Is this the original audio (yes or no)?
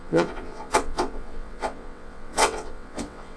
no